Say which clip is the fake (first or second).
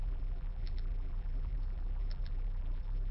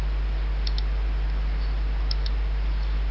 first